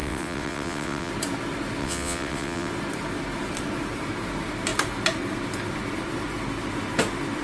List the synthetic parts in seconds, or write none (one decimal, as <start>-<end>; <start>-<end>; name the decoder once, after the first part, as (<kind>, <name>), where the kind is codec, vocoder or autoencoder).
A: 0.0-1.1 (vocoder, WaveNeXt); 1.8-2.7

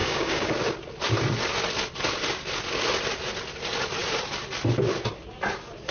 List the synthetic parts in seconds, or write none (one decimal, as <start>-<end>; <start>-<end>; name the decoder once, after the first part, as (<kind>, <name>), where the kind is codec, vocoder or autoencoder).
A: 0.0-0.5 (codec, DAC)

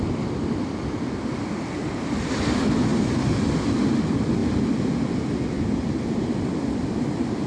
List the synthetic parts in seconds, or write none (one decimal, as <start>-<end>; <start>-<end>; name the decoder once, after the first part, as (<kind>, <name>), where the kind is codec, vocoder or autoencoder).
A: none

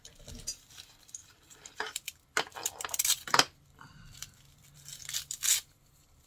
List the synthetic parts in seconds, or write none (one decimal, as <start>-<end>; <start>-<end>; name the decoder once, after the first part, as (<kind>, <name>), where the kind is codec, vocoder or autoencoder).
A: 1.2-5.0 (vocoder, BigVGAN v2)

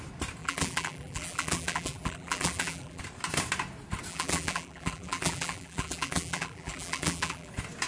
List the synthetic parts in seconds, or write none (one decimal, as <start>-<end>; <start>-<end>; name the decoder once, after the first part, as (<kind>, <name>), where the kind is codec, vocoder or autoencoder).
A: 0.4-3.0 (vocoder, BigVGAN v2); 4.1-7.5

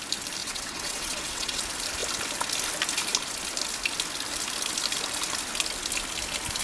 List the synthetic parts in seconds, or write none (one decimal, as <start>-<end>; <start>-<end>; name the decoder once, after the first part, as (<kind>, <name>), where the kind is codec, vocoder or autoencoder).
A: 0.4-1.6 (vocoder, WaveNeXt)

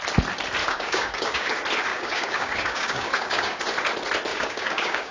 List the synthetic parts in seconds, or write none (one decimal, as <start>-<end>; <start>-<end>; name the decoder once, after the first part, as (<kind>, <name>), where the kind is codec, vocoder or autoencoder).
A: 0.6-1.5 (codec, DAC); 1.9-3.6; 4.3-5.1

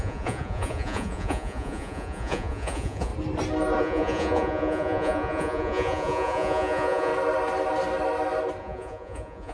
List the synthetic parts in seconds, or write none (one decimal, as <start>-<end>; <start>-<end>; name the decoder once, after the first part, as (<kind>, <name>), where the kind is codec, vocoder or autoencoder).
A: 0.0-3.1 (vocoder, Vocos); 3.8-7.1; 8.6-9.5